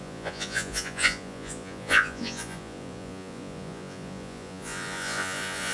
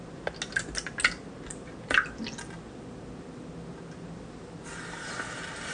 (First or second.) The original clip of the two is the second